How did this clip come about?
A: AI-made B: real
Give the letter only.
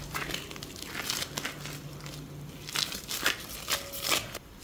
B